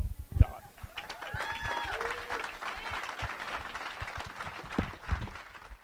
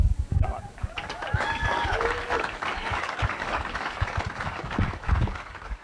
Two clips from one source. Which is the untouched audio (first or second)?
first